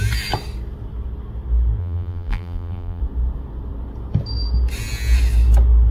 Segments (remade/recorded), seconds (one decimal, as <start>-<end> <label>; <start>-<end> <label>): 0.0-1.8 recorded; 1.8-3.0 remade; 3.0-5.9 recorded